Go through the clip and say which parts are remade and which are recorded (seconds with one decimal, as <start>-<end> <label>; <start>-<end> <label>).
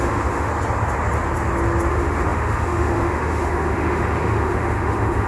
0.0-0.5 remade; 0.5-1.9 recorded; 1.9-5.3 remade